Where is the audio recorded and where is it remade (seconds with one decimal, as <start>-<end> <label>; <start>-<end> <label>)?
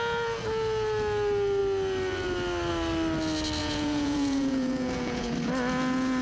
0.0-3.6 recorded; 3.6-5.3 remade; 5.3-6.2 recorded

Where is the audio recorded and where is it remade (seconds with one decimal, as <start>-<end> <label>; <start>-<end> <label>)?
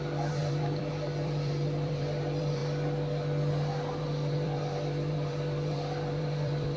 0.0-2.6 remade; 2.6-4.0 recorded; 4.0-6.8 remade